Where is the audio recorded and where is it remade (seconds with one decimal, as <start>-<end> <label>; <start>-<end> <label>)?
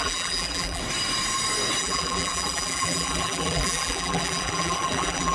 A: 0.0-0.8 remade; 0.8-1.8 recorded; 1.8-5.3 remade